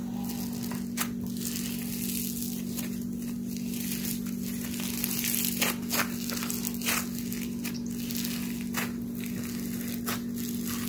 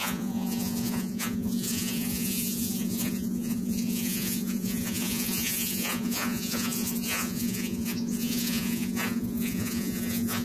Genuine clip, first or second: first